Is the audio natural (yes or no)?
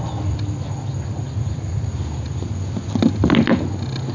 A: yes